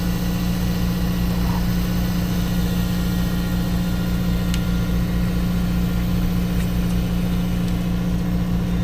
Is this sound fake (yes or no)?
no